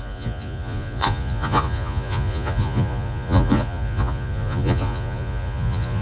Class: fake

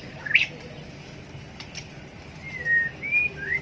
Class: real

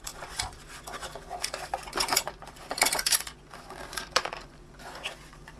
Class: fake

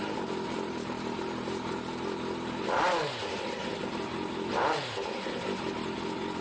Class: real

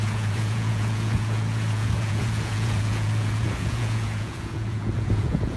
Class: fake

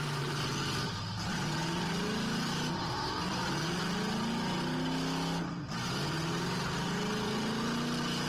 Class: real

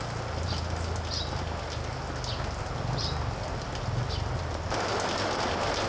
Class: real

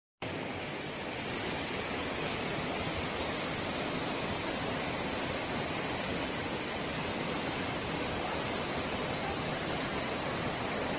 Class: real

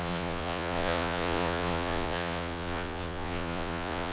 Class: fake